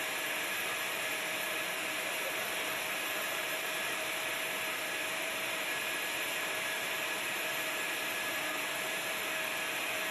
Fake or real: fake